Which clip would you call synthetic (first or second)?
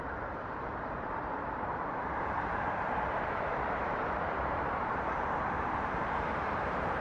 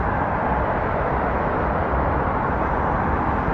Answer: first